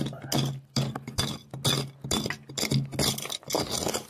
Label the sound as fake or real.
real